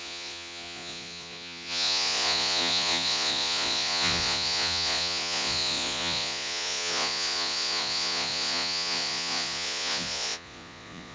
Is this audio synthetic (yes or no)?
yes